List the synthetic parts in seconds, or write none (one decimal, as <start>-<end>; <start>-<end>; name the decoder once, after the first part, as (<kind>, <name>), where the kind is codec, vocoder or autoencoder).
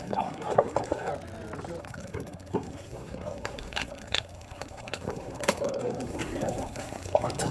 0.0-1.1 (codec, SNAC); 1.8-7.5